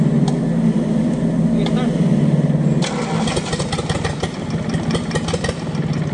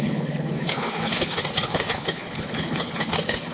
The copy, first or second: second